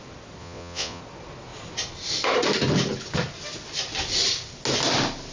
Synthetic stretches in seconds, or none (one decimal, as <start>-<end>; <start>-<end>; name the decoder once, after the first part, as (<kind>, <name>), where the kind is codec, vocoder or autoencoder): 0.4-1.0 (vocoder, Vocos)